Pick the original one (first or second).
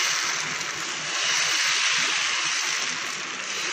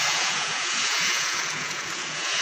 first